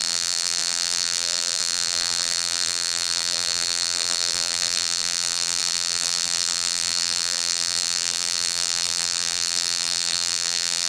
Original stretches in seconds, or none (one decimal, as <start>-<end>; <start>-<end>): none